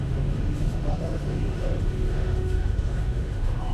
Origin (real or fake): fake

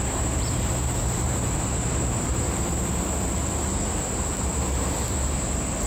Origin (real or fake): fake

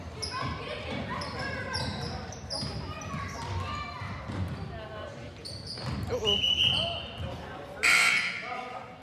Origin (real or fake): real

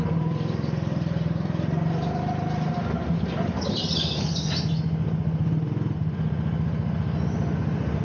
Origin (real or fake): real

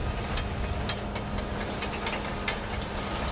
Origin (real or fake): real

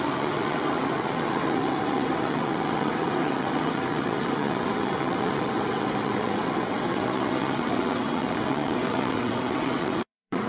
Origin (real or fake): fake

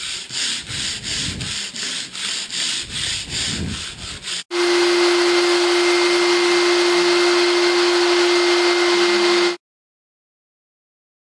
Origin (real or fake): real